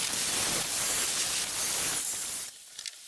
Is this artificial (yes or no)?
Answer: no